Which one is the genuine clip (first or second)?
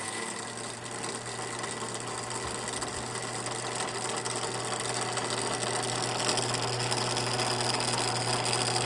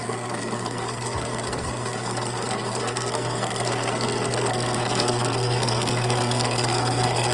first